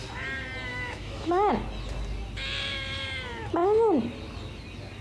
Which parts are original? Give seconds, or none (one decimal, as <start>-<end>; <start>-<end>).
0.0-0.7; 1.5-5.0